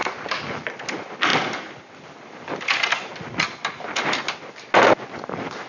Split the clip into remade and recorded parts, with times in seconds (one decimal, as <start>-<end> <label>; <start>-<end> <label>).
0.0-5.7 recorded